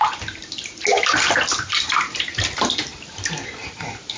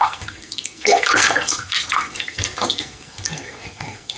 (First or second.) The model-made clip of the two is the second